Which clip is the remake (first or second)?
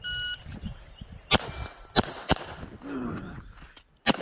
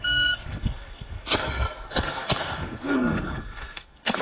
second